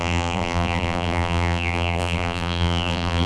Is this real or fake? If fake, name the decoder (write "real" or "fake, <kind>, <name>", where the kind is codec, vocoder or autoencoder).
fake, vocoder, BigVGAN v2